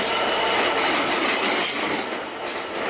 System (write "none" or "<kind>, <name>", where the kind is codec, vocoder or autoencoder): none